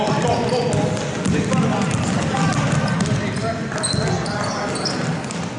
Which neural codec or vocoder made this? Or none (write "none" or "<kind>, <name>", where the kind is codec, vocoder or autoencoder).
none